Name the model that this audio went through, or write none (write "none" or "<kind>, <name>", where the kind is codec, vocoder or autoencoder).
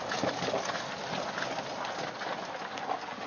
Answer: none